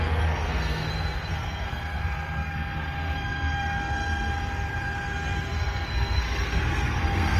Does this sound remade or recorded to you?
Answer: remade